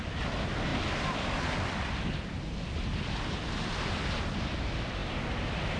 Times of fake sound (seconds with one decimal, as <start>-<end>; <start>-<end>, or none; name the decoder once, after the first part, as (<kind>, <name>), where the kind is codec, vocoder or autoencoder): none